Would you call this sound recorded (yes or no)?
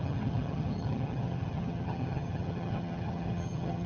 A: no